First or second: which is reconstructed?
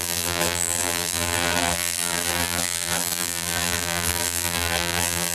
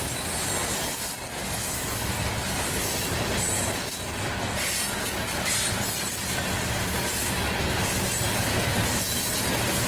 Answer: first